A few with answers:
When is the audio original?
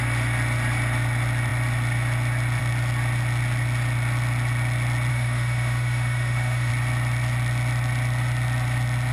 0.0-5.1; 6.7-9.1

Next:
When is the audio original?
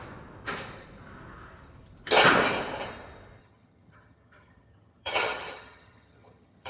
0.0-3.4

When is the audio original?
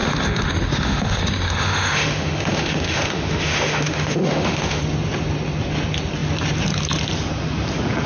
4.8-8.1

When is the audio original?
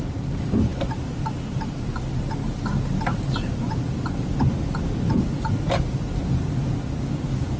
0.0-7.6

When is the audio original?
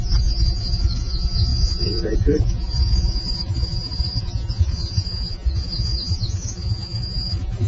none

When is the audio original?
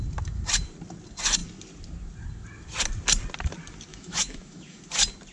0.0-3.9; 4.8-5.3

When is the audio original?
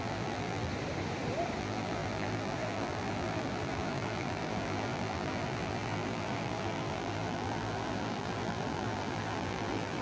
0.7-1.6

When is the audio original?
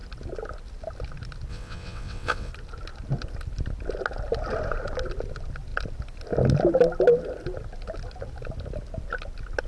0.0-1.5; 2.5-9.7